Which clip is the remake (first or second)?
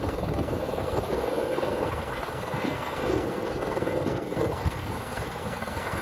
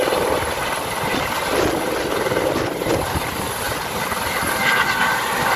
first